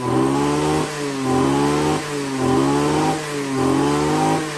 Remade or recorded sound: recorded